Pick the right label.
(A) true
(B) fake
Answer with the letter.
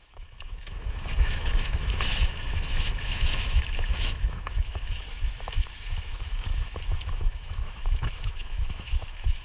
B